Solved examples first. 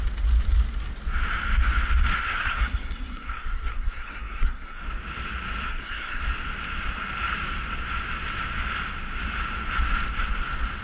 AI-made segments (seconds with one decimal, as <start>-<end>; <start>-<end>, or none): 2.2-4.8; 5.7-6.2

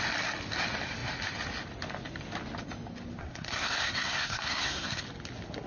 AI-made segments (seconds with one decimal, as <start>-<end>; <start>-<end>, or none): 3.2-5.0

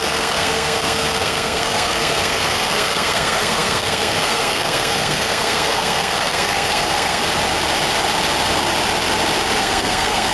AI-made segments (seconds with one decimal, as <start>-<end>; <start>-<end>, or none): 0.0-7.2; 9.6-10.3

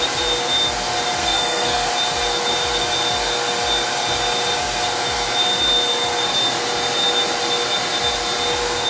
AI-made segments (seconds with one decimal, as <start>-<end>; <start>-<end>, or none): 1.2-1.9